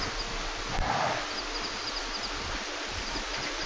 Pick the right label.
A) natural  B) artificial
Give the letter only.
A